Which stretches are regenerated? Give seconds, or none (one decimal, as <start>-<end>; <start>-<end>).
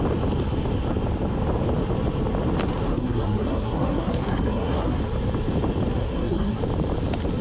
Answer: 2.9-5.0; 5.9-6.6